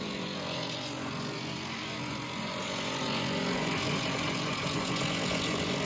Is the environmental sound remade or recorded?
remade